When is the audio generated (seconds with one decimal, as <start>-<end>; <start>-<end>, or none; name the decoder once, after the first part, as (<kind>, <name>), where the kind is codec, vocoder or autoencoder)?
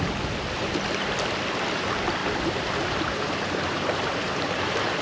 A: 2.2-5.0 (vocoder, BigVGAN v2)